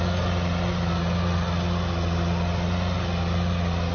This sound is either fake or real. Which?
real